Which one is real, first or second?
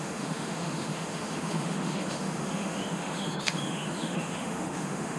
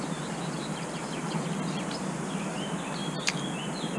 second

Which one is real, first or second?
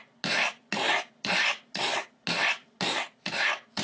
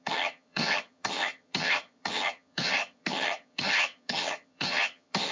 first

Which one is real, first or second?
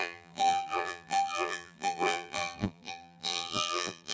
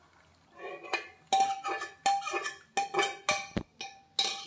second